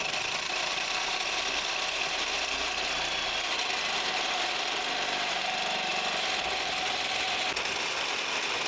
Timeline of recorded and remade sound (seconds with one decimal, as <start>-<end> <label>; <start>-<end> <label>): 0.0-8.7 recorded